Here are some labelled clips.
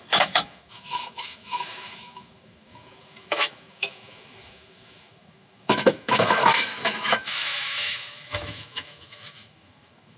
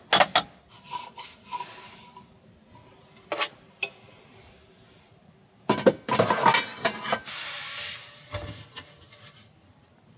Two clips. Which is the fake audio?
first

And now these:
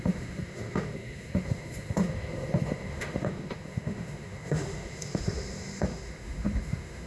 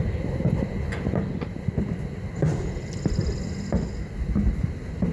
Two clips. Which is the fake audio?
first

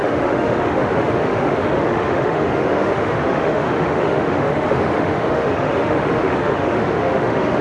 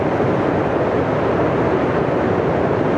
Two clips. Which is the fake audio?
first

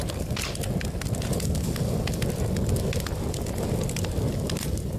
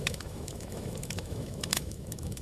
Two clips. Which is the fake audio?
second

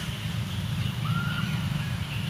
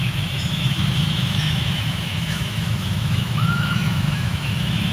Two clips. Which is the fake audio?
second